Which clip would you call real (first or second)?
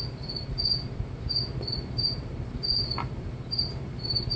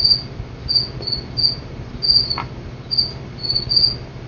second